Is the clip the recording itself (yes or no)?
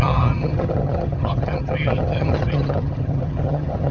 no